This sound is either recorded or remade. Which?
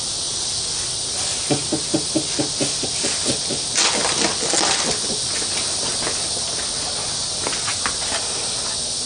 recorded